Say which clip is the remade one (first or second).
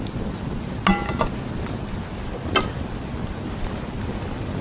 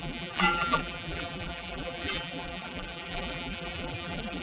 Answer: second